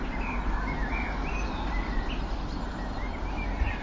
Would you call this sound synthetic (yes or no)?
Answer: no